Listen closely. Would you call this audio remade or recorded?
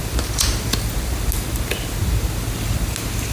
recorded